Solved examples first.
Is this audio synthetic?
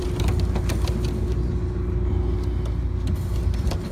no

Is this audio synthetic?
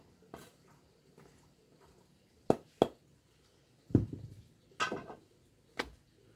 no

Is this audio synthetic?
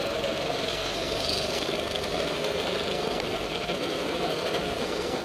yes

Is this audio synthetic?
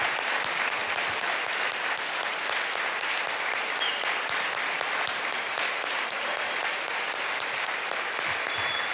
no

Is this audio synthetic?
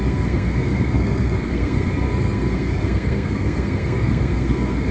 yes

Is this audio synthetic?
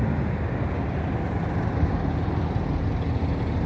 no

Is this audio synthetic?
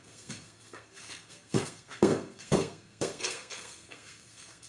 yes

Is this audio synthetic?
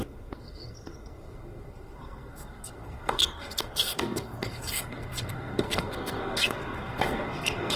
yes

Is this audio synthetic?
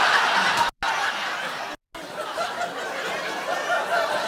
no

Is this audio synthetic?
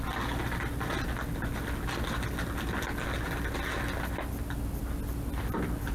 no